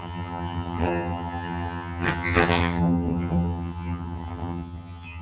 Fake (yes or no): yes